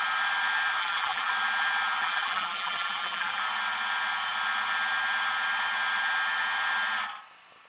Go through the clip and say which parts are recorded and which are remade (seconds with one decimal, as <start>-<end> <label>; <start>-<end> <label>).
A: 0.0-0.8 recorded; 0.8-1.3 remade; 1.3-2.0 recorded; 2.0-3.4 remade; 3.4-7.7 recorded